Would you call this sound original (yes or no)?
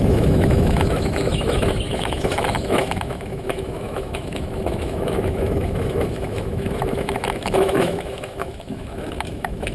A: no